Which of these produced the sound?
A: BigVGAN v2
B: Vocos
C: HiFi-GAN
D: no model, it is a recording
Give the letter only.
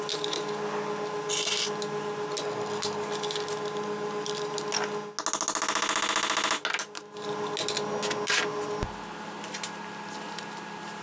D